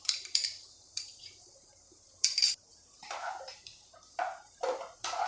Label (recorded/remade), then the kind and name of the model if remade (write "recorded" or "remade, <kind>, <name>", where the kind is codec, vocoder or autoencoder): remade, vocoder, BigVGAN v2